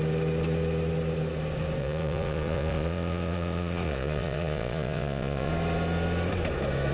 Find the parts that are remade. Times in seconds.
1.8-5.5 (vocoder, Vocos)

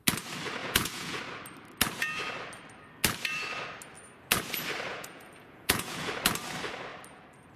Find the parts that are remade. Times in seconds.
0.6-1.2 (vocoder, Vocos); 4.9-6.1